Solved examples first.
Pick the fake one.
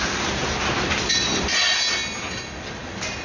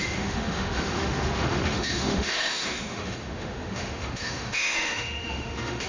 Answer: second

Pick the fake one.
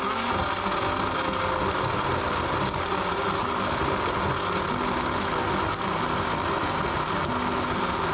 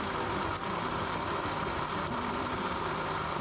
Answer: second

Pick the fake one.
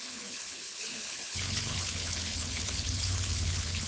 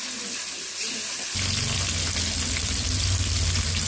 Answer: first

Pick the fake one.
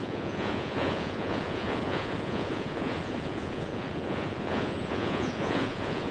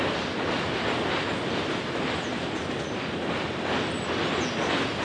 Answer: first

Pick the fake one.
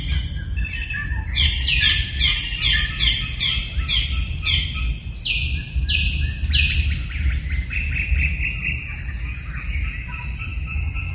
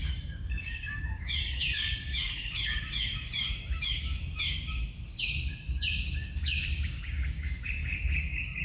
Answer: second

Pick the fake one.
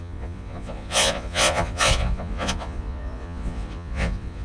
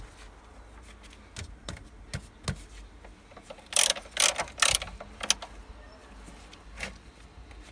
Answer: first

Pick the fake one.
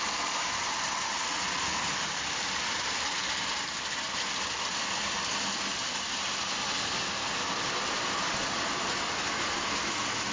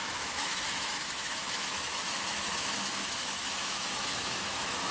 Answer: second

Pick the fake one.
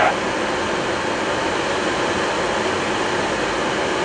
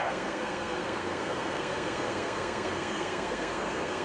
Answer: second